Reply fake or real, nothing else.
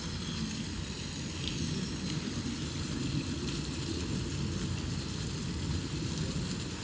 real